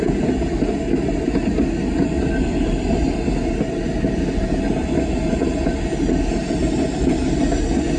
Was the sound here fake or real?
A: real